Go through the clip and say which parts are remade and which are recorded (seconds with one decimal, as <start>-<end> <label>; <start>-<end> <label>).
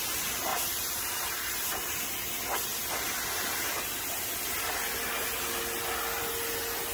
0.0-0.5 recorded; 0.5-2.1 remade; 2.1-6.9 recorded